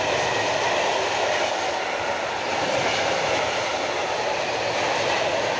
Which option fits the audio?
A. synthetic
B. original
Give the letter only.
B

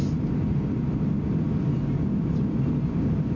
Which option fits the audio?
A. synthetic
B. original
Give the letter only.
B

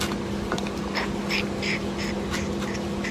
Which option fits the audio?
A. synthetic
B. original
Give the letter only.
B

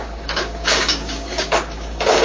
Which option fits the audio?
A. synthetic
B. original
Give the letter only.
A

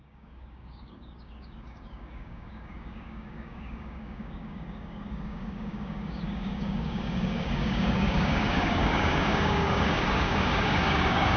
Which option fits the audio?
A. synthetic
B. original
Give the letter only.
A